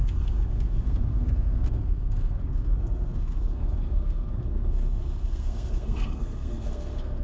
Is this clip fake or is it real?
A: fake